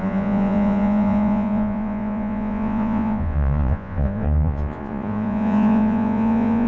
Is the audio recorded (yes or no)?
no